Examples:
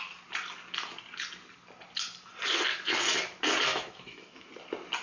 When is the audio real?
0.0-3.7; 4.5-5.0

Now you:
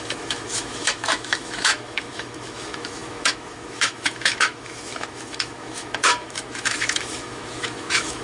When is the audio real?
none

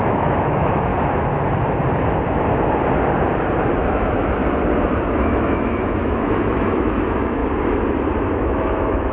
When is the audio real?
0.9-3.8; 4.4-5.1; 7.4-8.2